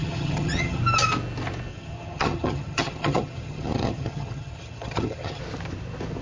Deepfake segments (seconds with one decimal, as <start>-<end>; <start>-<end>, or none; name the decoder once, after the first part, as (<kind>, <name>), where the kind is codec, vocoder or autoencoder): 0.0-0.8 (vocoder, HiFi-GAN); 1.7-5.4